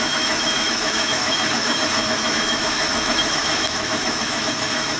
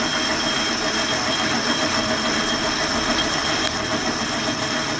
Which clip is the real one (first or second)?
second